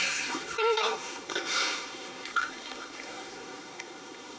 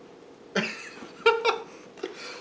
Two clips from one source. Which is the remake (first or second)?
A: first